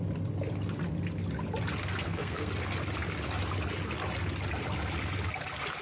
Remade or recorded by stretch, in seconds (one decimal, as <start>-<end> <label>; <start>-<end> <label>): 0.0-1.8 recorded; 1.8-2.5 remade; 2.5-5.8 recorded

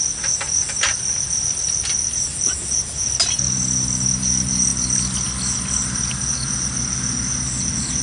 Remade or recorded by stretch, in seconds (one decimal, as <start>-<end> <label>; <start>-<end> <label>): 0.0-8.0 recorded